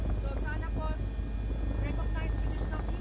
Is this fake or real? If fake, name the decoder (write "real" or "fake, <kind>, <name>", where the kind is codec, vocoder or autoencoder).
real